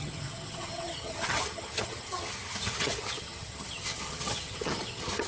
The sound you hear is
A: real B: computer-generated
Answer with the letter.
B